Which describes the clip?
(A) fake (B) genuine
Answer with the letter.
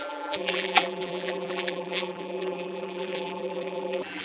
A